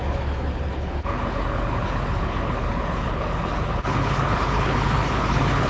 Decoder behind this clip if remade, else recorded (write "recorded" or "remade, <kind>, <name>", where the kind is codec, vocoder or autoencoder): remade, codec, HILCodec